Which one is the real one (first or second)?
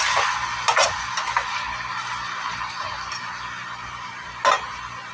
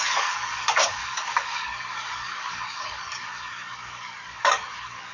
first